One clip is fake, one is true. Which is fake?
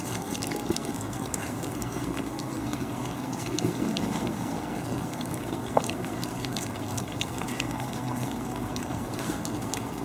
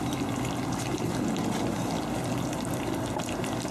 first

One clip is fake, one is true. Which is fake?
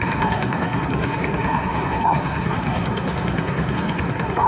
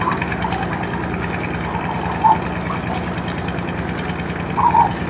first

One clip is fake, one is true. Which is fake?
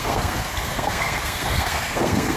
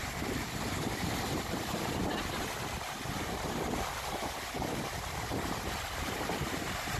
first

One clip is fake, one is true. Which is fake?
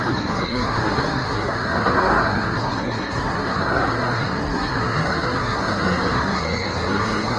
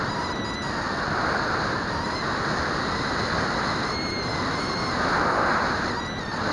first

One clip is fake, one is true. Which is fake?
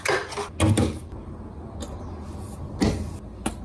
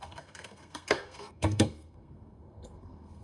second